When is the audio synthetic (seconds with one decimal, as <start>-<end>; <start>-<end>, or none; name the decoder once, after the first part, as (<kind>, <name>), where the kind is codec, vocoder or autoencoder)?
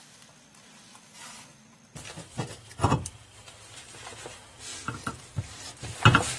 0.9-4.0 (vocoder, BigVGAN v2)